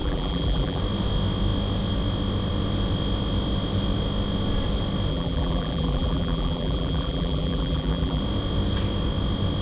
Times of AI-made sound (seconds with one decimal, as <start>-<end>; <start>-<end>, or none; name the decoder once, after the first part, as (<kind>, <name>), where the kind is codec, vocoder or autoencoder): 0.0-0.8 (vocoder, BigVGAN v2); 5.1-8.2

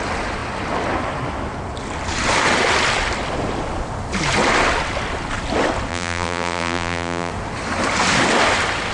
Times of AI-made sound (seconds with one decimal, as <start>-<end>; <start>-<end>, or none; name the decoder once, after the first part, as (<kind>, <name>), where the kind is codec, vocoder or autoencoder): 5.9-7.3 (vocoder, BigVGAN v2)

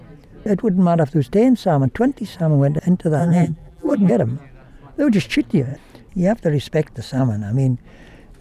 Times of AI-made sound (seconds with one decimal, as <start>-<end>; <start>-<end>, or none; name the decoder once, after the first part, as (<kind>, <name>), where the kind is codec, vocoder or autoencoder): 3.2-4.1 (vocoder, BigVGAN v2)

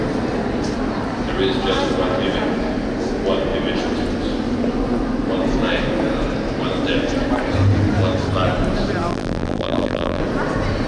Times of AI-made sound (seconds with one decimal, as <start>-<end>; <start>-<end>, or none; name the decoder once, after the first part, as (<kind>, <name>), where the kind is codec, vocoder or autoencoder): 9.1-10.2 (vocoder, BigVGAN v2)

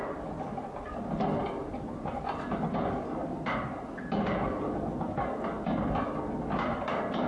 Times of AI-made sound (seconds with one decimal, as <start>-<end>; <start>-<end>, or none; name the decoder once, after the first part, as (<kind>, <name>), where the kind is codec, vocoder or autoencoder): 1.5-3.7 (vocoder, BigVGAN v2)

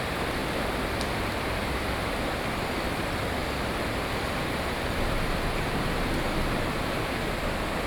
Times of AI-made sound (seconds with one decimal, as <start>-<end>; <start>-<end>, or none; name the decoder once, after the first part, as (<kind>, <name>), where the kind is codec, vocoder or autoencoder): 0.0-0.4 (vocoder, BigVGAN v2); 2.4-3.4